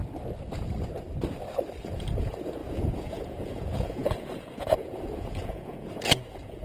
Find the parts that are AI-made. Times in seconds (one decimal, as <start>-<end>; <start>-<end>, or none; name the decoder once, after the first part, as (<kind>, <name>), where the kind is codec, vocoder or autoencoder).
1.8-6.6 (vocoder, Vocos)